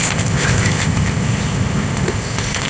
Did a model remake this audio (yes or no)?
yes